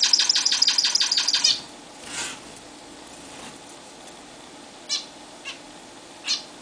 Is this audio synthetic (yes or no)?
no